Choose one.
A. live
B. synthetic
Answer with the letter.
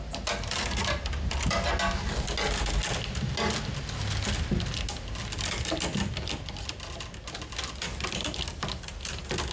A